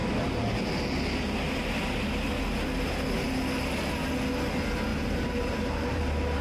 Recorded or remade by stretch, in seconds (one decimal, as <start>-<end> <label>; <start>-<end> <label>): 0.0-4.9 recorded; 4.9-6.0 remade; 6.0-6.4 recorded